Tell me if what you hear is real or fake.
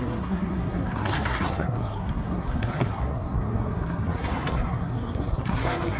fake